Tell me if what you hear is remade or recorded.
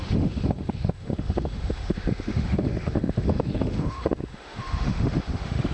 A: remade